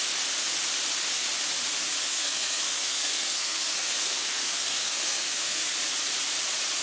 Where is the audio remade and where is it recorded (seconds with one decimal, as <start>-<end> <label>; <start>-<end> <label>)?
0.0-2.1 recorded; 2.1-5.7 remade; 5.7-6.8 recorded